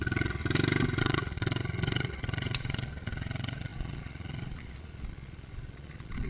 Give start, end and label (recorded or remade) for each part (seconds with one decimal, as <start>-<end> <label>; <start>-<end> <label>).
0.0-0.4 remade; 0.4-1.0 recorded; 1.0-6.3 remade